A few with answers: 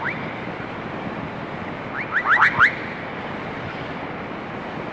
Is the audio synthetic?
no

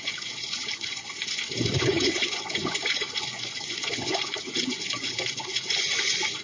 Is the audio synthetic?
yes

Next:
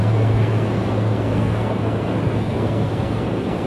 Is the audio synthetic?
yes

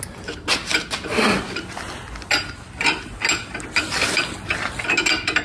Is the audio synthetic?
no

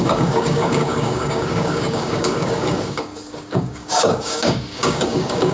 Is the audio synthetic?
yes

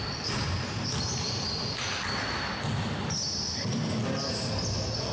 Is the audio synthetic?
no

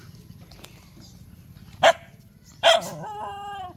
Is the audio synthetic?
no